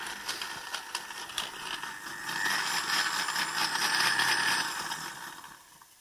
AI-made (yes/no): no